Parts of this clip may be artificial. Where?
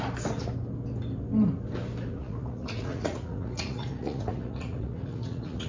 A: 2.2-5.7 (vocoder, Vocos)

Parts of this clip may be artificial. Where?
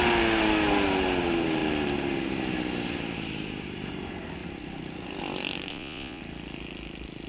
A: 5.7-6.2 (vocoder, Vocos)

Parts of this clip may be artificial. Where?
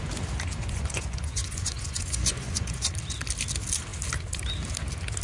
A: 0.6-2.9 (vocoder, Vocos)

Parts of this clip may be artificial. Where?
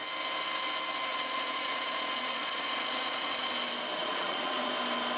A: 1.1-3.5 (vocoder, Vocos); 4.0-4.7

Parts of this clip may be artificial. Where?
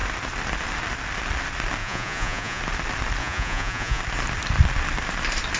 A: 1.8-2.6 (vocoder, Vocos); 3.2-4.0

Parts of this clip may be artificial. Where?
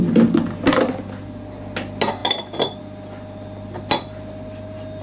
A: none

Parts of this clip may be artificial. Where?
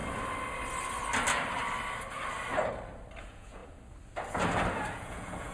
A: 3.2-3.6 (vocoder, Vocos); 4.9-5.5